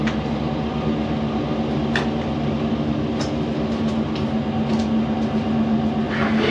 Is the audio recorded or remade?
recorded